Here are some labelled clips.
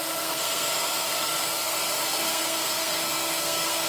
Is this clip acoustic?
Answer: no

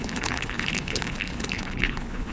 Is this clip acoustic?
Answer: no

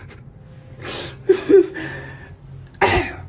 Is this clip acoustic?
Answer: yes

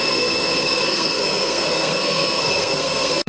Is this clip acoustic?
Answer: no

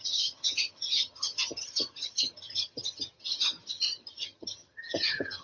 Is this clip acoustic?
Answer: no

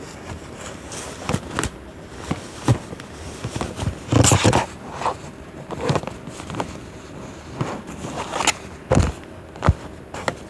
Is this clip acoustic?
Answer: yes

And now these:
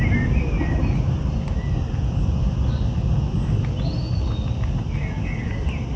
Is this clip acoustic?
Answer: yes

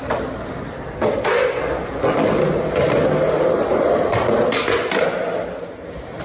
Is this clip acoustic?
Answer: yes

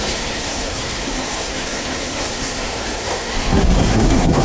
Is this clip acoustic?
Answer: no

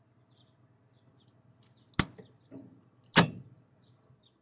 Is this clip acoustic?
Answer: yes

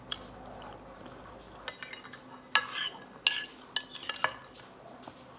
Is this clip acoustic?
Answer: yes